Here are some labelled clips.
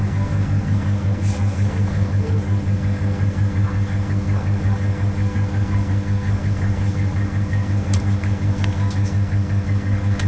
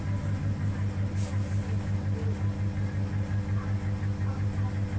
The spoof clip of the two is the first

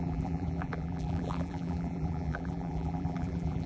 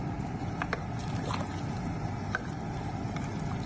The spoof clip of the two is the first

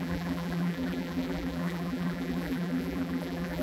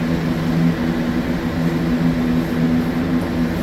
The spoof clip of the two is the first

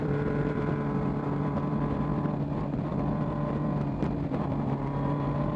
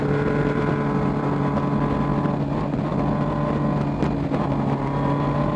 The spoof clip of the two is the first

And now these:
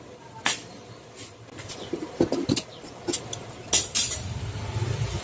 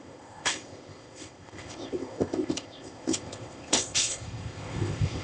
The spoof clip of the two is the second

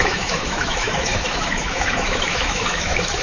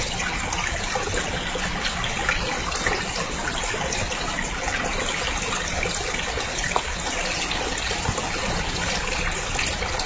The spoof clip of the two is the first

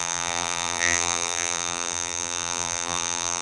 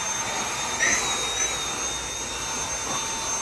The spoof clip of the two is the first